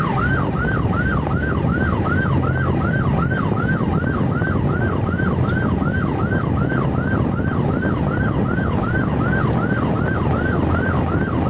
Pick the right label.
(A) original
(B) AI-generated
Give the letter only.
A